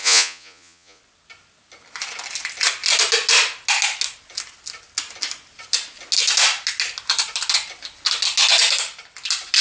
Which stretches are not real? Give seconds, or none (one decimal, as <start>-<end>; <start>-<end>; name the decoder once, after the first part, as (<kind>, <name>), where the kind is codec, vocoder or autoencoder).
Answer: 0.0-1.0 (vocoder, Vocos)